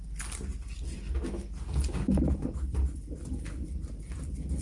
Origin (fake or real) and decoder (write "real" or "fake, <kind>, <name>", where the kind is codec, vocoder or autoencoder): real